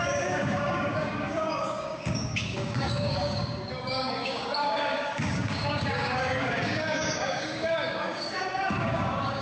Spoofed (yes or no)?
yes